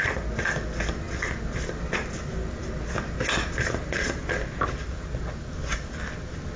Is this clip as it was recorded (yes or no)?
yes